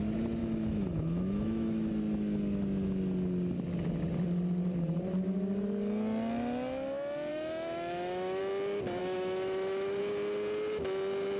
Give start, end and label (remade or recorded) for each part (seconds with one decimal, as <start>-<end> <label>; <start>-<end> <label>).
0.0-0.4 recorded; 0.4-1.9 remade; 1.9-7.3 recorded; 7.3-8.4 remade; 8.4-9.0 recorded; 9.0-10.0 remade; 10.0-11.4 recorded